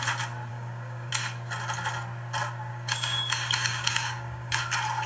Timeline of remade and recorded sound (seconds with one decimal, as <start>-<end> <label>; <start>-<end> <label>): 0.0-0.5 recorded; 0.5-1.1 remade; 1.1-2.7 recorded; 2.7-4.6 remade; 4.6-5.1 recorded